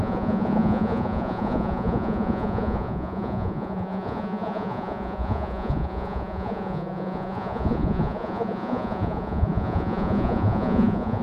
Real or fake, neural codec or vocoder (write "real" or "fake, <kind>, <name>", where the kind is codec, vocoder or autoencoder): fake, vocoder, Vocos